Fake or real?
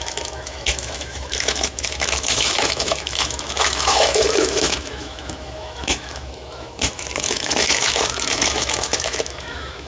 fake